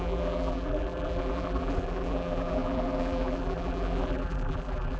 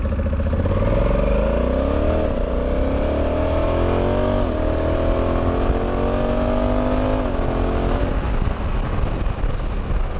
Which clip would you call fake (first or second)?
first